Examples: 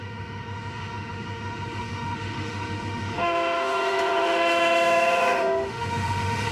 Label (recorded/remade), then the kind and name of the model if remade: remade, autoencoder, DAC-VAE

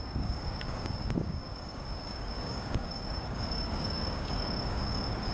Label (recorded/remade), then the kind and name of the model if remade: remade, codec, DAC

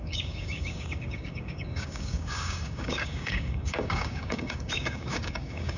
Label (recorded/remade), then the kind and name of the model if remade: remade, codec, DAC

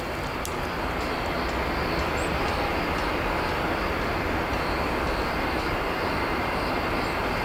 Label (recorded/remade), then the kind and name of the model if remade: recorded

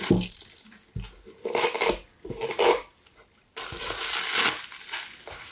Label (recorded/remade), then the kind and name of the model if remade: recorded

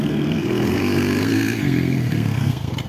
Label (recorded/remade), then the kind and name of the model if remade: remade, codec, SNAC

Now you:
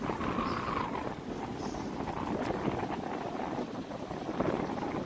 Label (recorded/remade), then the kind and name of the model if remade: recorded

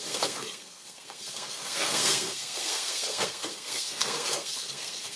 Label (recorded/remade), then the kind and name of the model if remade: remade, codec, SNAC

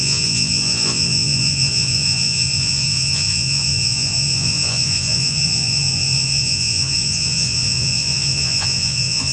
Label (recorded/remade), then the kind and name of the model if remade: remade, vocoder, Vocos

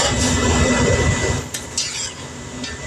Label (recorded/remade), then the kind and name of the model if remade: recorded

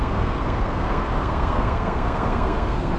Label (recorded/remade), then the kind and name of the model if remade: remade, codec, SNAC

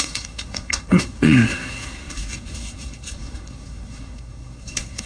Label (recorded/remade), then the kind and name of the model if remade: remade, codec, SNAC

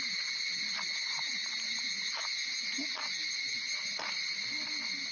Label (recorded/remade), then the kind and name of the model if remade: recorded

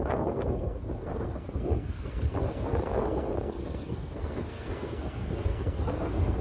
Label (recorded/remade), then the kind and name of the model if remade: remade, codec, SNAC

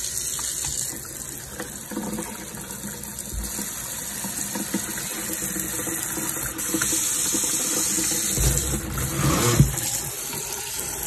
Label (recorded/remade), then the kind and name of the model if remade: recorded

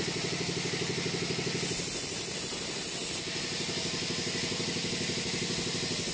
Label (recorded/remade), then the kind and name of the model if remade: recorded